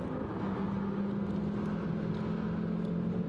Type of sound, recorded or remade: recorded